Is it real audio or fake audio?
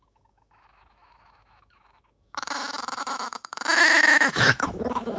fake